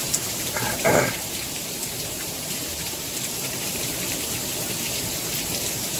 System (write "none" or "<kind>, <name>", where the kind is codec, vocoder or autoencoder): vocoder, BigVGAN v2